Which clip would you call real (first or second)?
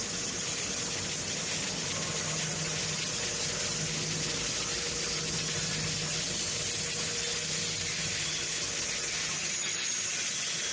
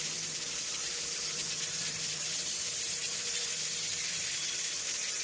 first